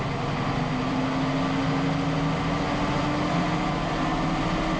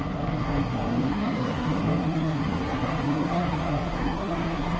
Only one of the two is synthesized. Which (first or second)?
second